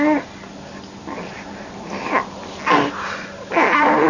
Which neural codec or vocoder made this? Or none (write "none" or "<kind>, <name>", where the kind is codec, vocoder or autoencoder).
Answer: none